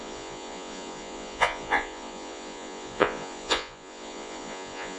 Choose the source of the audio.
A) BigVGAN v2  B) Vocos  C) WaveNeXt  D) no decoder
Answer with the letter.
B